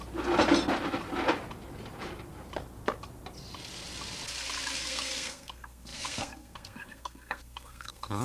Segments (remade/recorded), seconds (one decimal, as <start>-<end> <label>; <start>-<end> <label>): 0.0-4.8 recorded; 4.8-8.2 remade